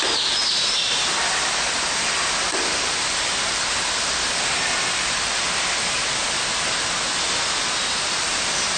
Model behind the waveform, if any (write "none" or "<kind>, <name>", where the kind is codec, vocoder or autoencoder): none